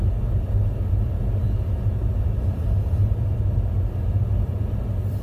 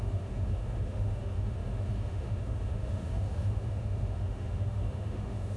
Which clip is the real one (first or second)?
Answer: first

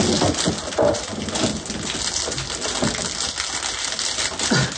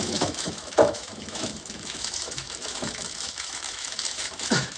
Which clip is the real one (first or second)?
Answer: first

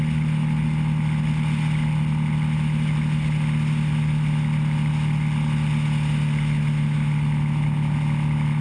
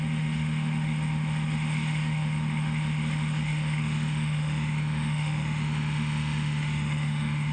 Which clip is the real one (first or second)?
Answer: first